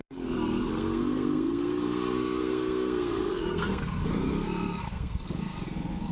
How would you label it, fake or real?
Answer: fake